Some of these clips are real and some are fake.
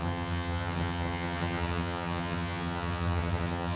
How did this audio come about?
fake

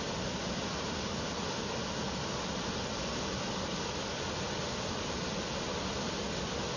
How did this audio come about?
real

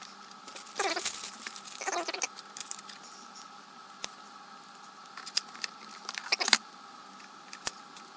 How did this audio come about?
real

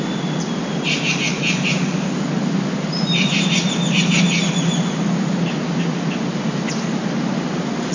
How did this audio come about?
real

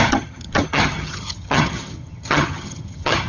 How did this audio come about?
fake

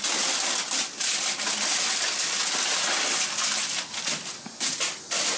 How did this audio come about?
real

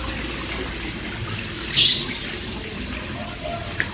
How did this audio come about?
real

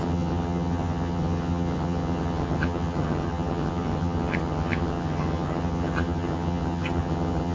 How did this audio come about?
fake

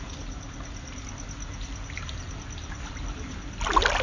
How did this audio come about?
real